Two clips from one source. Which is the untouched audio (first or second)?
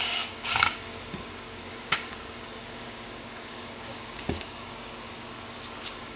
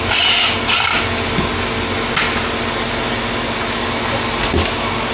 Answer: second